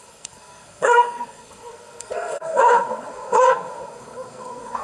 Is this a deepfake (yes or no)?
yes